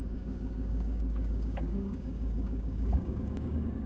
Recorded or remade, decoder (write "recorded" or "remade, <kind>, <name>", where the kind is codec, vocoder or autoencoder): remade, codec, DAC